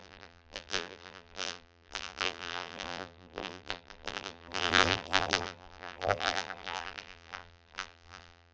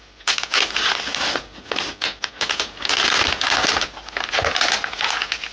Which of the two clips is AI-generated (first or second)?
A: first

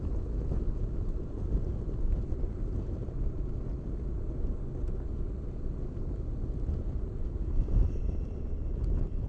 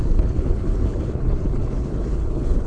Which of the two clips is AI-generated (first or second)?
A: second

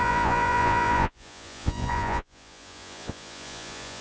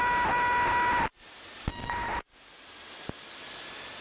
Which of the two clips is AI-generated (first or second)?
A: first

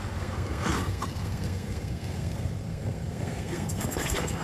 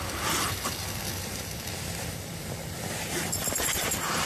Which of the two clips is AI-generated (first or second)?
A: first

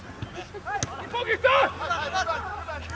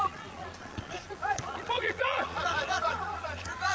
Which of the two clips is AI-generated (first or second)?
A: second